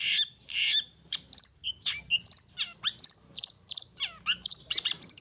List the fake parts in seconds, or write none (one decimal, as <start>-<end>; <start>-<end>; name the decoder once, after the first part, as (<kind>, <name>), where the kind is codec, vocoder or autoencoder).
0.0-1.6 (vocoder, BigVGAN v2); 3.8-5.2